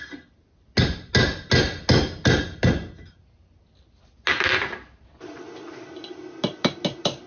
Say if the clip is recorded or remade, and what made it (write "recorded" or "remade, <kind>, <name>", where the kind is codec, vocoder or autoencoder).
recorded